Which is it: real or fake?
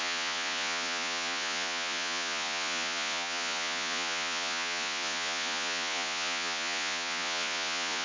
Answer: fake